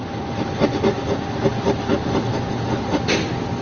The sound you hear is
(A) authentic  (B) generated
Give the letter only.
A